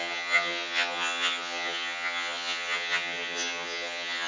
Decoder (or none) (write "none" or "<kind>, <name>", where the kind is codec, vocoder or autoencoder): vocoder, HiFi-GAN